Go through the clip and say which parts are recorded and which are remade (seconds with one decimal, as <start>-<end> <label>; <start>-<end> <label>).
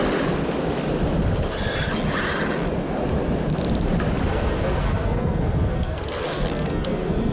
0.0-4.3 recorded; 4.3-7.3 remade